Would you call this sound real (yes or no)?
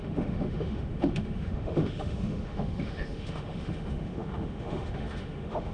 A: no